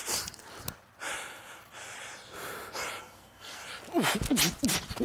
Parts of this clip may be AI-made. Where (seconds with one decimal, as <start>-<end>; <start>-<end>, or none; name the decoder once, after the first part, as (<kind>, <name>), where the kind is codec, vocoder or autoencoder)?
3.0-3.6 (codec, SNAC)